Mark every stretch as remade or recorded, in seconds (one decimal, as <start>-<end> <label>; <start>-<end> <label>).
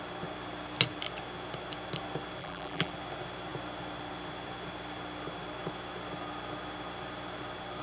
0.0-2.4 recorded; 2.4-2.9 remade; 2.9-7.8 recorded